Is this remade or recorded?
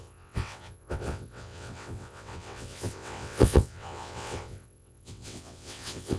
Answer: remade